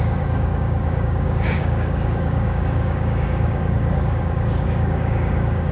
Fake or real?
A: fake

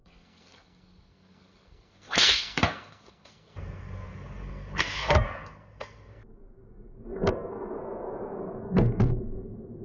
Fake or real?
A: fake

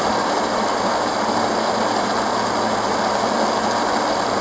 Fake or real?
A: real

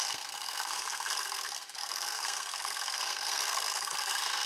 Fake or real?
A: fake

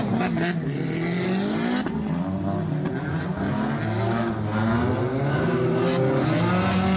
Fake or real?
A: real